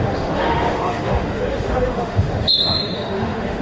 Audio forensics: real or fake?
fake